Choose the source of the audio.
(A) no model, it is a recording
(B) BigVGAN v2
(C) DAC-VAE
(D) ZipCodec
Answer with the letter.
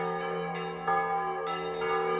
A